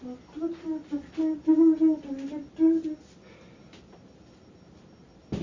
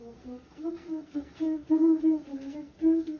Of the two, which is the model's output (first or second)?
second